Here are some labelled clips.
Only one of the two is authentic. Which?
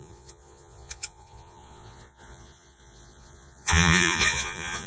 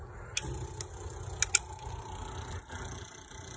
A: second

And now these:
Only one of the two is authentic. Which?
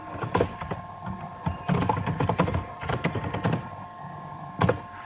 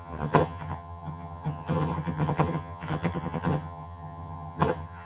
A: first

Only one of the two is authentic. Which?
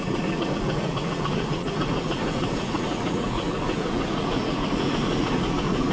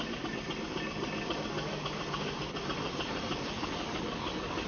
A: second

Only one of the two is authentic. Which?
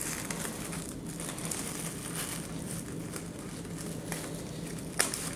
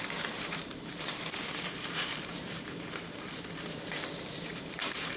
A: first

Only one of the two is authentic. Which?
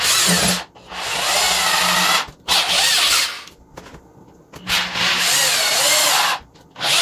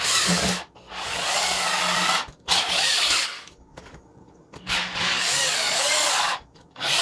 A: first